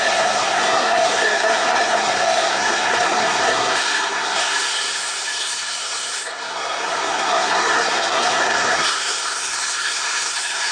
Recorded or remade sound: remade